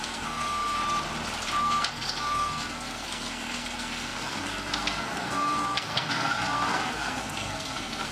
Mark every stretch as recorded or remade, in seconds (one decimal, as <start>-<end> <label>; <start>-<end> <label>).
0.0-0.8 remade; 0.8-1.6 recorded; 1.6-8.1 remade